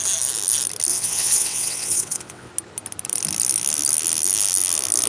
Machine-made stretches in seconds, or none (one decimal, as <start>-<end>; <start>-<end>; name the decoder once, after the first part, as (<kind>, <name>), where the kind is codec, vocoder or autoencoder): 0.9-2.5 (vocoder, WaveNeXt)